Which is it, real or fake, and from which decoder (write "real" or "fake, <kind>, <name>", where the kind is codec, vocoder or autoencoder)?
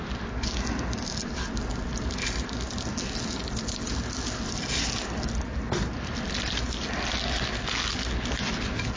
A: real